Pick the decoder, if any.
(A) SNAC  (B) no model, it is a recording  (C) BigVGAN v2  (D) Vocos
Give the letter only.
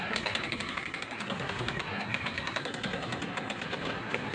A